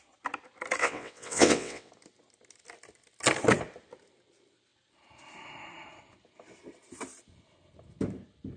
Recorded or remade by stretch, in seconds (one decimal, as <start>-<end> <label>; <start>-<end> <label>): 0.0-0.8 recorded; 0.8-1.9 remade; 1.9-8.6 recorded